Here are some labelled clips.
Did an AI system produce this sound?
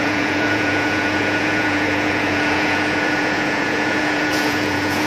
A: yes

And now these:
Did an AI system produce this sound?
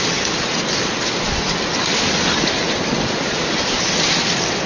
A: no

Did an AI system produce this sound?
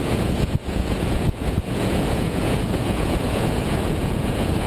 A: yes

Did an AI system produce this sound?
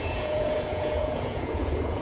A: yes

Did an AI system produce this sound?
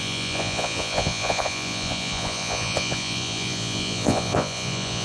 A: yes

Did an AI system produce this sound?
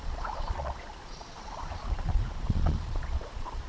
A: yes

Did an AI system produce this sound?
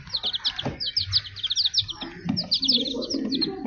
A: no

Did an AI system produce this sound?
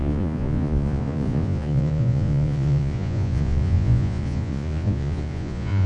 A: yes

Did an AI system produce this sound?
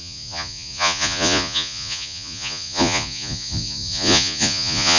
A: yes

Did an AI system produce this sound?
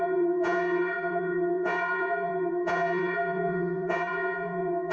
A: yes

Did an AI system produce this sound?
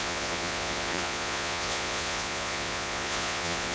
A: yes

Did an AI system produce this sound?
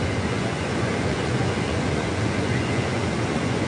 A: yes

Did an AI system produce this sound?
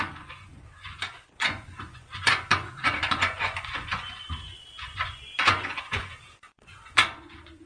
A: yes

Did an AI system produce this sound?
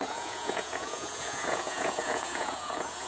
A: yes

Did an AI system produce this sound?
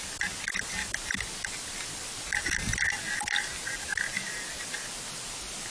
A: no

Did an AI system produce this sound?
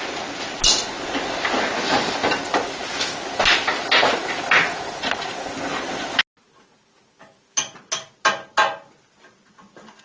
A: no